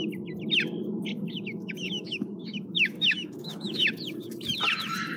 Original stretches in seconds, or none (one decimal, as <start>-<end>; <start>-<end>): 0.0-0.9; 4.0-5.2